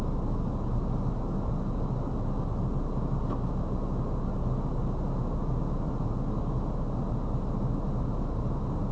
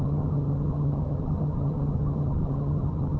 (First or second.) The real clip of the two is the first